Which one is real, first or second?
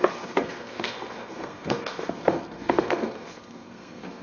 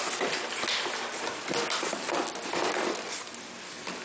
second